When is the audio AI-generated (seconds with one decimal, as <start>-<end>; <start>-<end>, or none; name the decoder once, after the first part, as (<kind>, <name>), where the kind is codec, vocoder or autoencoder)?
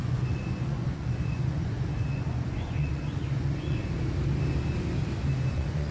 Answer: 0.0-3.8 (vocoder, Vocos); 5.5-5.9